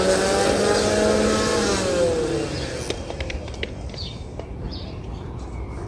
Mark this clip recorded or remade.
recorded